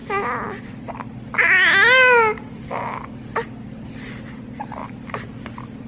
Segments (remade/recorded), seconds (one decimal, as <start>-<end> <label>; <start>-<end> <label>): 0.0-5.9 recorded